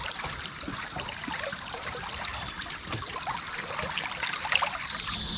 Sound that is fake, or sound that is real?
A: real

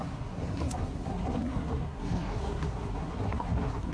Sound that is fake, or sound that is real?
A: fake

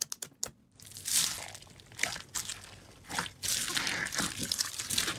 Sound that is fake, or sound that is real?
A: real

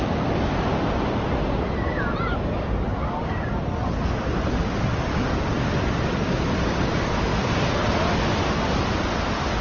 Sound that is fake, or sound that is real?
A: real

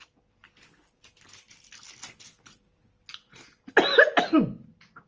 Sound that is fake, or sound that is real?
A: real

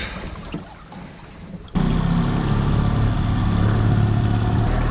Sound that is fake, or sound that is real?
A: real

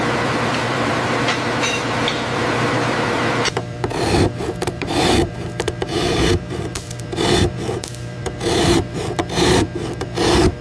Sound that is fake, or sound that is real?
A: fake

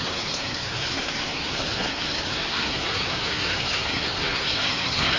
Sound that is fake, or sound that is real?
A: fake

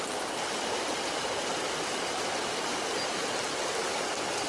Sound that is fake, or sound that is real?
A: real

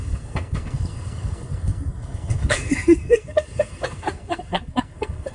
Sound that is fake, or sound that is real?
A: fake